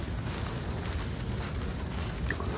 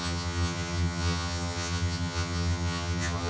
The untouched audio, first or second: first